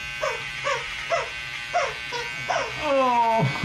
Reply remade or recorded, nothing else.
recorded